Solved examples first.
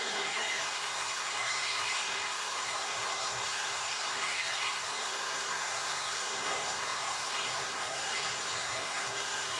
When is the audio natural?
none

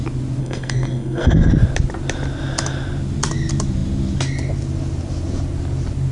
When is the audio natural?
0.0-0.4; 1.5-6.1

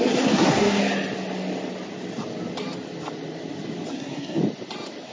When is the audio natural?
0.8-3.9; 4.4-5.1

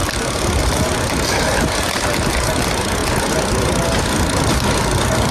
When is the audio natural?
0.0-5.3

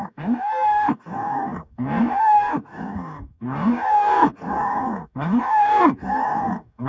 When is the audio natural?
none

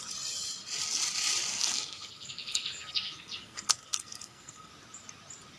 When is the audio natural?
0.0-1.5; 4.7-5.6

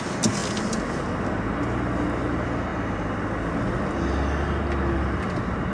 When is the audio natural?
0.0-5.7